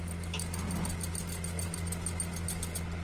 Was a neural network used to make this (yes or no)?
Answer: no